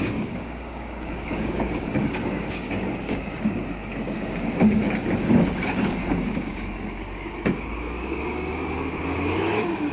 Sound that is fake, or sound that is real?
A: fake